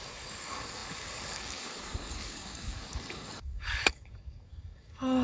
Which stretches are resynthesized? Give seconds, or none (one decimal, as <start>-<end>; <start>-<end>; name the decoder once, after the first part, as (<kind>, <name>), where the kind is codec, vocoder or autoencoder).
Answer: 0.0-5.2 (codec, DAC)